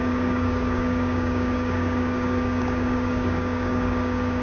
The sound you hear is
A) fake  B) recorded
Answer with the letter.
A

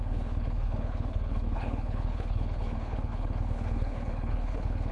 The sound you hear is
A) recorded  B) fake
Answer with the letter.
B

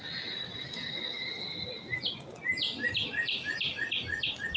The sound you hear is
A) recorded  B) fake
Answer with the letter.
A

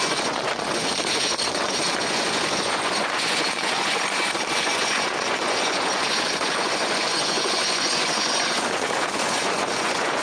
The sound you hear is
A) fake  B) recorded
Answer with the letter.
A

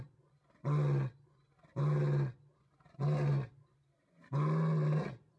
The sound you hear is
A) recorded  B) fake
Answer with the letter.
A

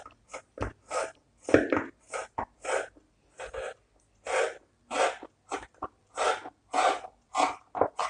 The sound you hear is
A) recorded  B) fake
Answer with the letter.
A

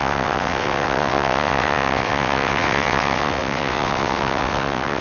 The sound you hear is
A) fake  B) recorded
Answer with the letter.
A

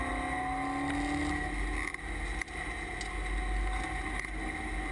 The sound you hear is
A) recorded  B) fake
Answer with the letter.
A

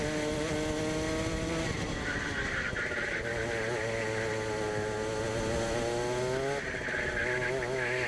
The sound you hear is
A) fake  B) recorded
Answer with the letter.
B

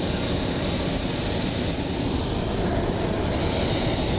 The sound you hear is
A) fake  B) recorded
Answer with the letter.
B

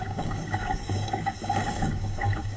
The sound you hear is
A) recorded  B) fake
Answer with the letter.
B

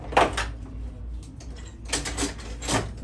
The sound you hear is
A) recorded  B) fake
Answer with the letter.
A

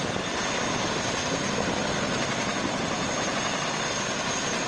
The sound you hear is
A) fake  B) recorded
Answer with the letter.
B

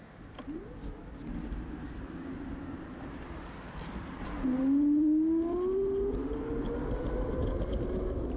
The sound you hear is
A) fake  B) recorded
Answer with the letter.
B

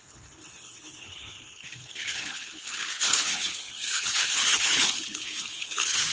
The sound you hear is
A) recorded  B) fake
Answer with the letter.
B